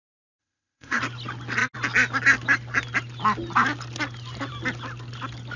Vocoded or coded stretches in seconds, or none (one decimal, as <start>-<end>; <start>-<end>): 0.4-1.0